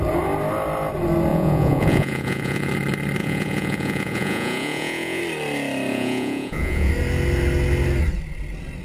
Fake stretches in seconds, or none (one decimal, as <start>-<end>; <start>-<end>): 1.3-2.7; 3.2-5.2; 5.9-6.9